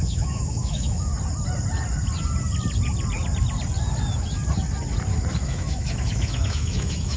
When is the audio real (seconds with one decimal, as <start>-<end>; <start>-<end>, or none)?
1.1-5.4